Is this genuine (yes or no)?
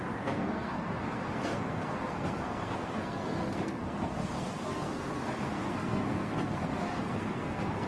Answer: no